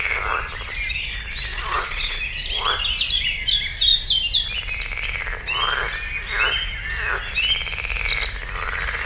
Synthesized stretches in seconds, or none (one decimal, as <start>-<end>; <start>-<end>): 1.5-2.2